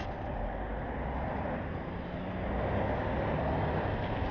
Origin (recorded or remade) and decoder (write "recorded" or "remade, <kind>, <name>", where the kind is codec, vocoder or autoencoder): recorded